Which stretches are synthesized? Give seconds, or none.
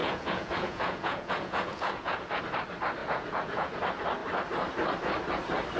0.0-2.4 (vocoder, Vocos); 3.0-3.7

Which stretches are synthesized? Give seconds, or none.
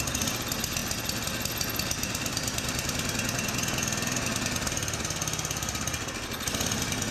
none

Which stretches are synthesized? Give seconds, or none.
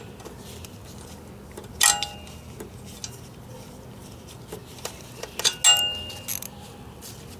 none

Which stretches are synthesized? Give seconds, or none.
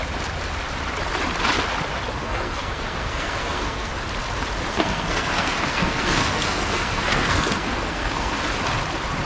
2.2-3.9 (codec, SNAC); 4.7-8.4